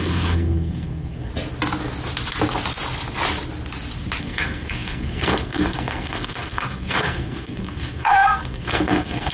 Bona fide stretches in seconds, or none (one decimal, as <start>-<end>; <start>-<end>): 1.3-4.2